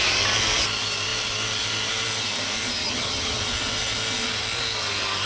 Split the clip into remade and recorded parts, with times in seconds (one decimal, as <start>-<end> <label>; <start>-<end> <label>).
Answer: 0.0-2.8 recorded; 2.8-3.4 remade; 3.4-5.3 recorded